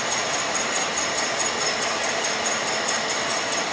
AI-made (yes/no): no